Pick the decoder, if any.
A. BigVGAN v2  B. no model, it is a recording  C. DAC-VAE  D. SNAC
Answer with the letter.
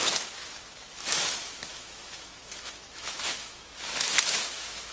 C